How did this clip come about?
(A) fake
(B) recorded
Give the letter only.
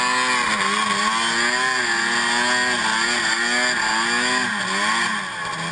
B